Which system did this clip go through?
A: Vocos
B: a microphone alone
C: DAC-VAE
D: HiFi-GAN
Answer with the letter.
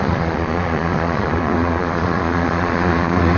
A